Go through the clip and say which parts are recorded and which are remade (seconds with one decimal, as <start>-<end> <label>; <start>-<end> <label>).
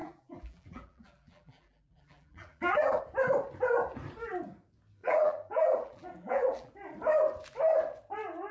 0.0-3.0 remade; 3.0-5.0 recorded; 5.0-6.7 remade; 6.7-8.5 recorded